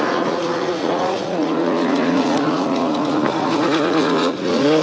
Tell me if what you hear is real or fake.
fake